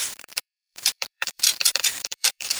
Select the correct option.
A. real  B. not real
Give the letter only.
B